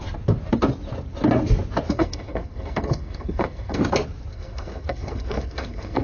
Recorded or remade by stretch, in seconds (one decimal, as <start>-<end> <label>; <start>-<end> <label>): 0.0-1.9 recorded; 1.9-3.8 remade; 3.8-4.3 recorded; 4.3-6.0 remade